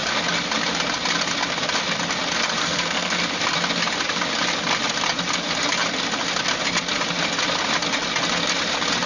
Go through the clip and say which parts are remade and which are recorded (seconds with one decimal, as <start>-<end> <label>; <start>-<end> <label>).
0.0-2.6 recorded; 2.6-3.2 remade; 3.2-9.1 recorded